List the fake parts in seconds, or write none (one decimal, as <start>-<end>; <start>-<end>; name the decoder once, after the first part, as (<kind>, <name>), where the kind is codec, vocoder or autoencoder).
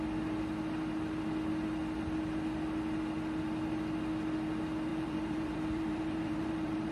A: 4.9-6.9 (vocoder, BigVGAN v2)